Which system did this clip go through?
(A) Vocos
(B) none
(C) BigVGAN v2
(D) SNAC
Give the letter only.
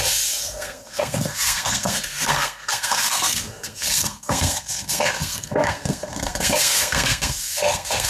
D